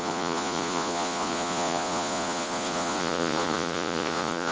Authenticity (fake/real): fake